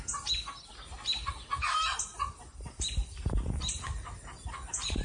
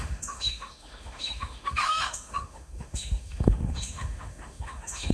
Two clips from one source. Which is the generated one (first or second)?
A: second